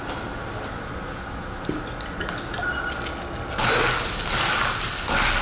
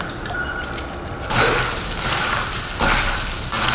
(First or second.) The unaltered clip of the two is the first